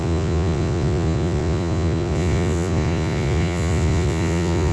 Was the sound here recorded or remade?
remade